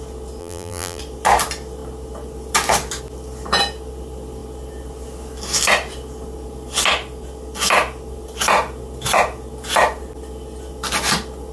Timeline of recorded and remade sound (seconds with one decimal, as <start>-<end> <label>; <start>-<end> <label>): 0.0-0.4 recorded; 0.4-1.0 remade; 1.0-11.5 recorded